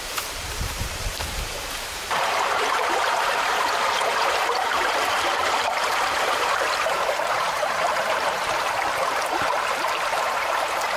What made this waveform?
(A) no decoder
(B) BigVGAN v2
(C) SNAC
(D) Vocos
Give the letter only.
B